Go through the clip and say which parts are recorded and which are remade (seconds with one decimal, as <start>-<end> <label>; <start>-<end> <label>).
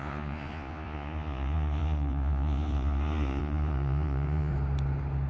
0.0-4.5 remade; 4.5-5.3 recorded